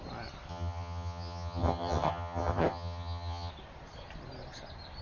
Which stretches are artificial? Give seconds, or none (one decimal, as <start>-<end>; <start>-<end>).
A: 0.5-3.5